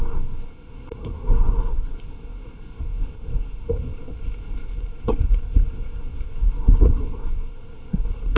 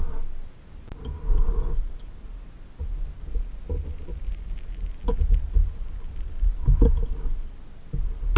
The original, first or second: second